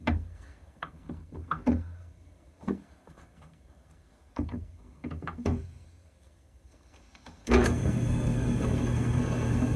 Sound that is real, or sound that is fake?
fake